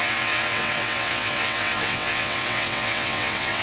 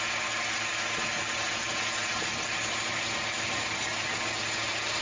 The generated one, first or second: first